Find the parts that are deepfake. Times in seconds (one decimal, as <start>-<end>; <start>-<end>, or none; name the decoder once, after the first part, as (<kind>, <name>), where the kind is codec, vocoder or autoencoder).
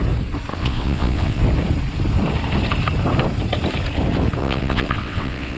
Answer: 0.5-1.4 (vocoder, WaveNeXt); 4.4-5.6